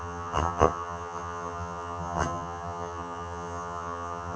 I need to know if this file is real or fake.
fake